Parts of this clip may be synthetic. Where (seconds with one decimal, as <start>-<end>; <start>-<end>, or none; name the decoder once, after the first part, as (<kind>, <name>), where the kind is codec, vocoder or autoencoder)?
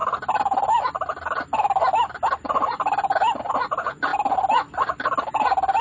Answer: none